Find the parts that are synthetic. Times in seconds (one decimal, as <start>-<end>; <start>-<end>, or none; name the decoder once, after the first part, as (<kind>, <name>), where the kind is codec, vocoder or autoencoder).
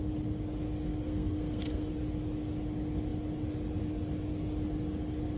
1.0-1.9 (codec, SNAC)